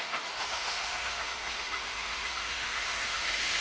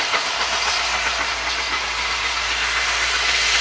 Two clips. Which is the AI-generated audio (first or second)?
first